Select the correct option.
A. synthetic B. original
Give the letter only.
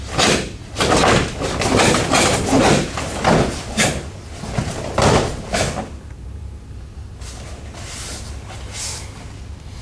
B